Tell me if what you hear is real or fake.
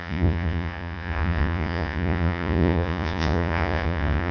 fake